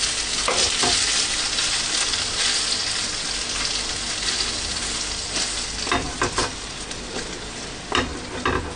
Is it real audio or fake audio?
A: real